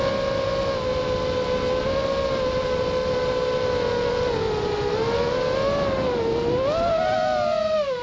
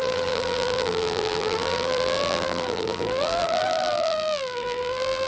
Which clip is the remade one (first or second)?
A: second